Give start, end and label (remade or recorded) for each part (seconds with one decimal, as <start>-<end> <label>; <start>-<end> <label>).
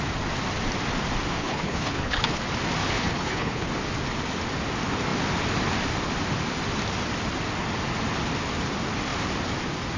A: 0.0-1.4 recorded; 1.4-2.4 remade; 2.4-2.8 recorded; 2.8-3.7 remade; 3.7-10.0 recorded